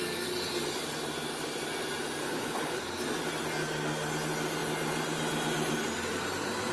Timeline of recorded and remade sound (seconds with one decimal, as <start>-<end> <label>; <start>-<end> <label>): 0.0-2.2 recorded; 2.2-2.8 remade; 2.8-6.7 recorded